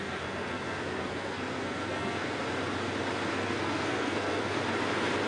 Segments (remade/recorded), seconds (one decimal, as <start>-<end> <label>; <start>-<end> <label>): 0.0-2.4 remade; 2.4-3.3 recorded; 3.3-4.6 remade; 4.6-5.3 recorded